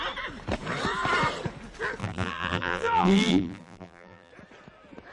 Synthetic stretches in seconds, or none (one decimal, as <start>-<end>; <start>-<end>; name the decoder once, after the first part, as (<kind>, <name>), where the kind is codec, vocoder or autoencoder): 2.0-4.3 (vocoder, BigVGAN v2)